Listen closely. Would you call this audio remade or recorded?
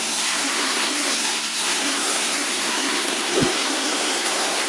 remade